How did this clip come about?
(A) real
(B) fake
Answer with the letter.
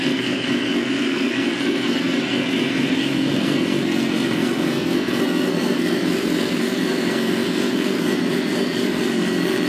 B